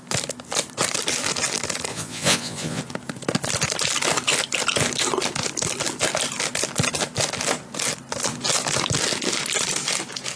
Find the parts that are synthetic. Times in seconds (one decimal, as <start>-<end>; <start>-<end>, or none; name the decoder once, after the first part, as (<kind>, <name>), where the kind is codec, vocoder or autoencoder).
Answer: 1.9-2.8 (vocoder, Vocos)